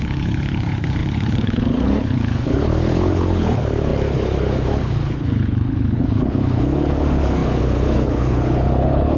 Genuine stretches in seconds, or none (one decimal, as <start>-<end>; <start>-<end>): none